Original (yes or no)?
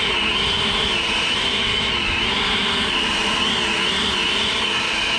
yes